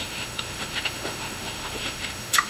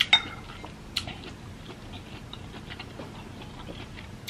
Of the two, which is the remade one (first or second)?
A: first